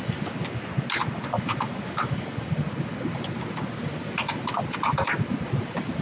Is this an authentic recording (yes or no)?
yes